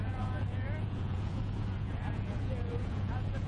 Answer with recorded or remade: remade